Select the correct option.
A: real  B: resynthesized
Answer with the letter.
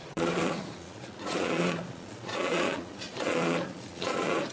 B